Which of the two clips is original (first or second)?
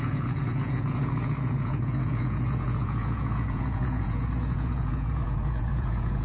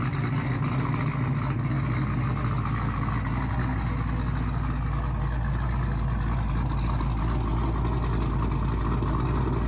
second